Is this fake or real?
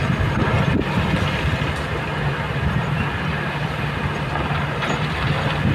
fake